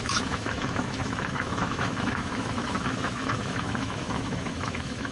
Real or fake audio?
fake